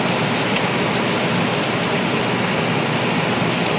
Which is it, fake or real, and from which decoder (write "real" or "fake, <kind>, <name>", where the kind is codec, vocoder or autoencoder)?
real